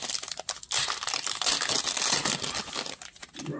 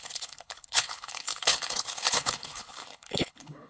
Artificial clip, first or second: second